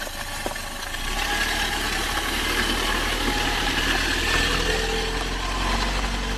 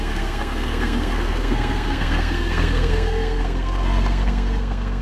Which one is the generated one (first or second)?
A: second